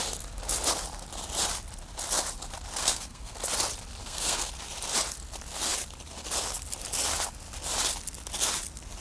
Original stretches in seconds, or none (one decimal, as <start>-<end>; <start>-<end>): 0.0-2.8; 3.4-4.0; 4.5-9.0